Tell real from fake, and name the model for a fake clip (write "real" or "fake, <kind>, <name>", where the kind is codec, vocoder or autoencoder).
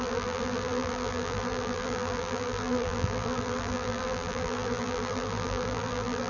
fake, vocoder, BigVGAN v2